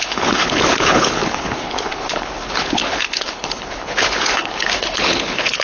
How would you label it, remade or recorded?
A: remade